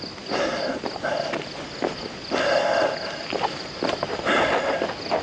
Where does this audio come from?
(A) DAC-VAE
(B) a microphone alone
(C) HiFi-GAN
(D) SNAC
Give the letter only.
B